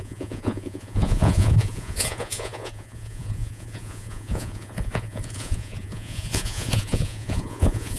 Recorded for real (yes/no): no